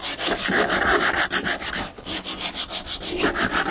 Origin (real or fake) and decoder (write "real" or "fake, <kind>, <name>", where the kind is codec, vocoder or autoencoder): real